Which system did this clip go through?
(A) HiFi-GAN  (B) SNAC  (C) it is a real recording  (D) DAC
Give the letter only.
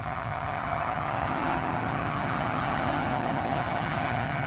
A